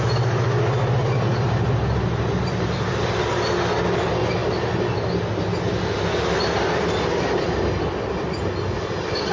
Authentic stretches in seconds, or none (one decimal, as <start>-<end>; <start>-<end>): 0.0-9.3